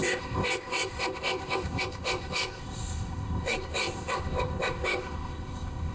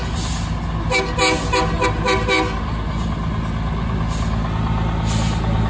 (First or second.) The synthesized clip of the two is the first